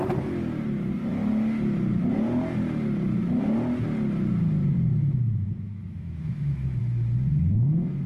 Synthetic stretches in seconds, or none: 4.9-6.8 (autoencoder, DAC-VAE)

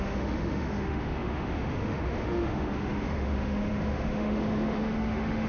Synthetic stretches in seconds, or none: 0.0-5.5 (autoencoder, DAC-VAE)

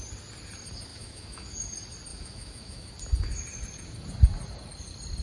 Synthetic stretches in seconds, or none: 0.9-1.5 (autoencoder, DAC-VAE); 2.1-2.9

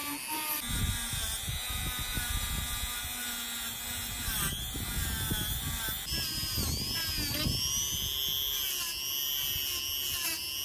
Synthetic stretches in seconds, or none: none

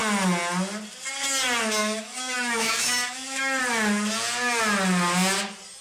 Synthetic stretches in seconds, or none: 1.8-3.6 (autoencoder, DAC-VAE)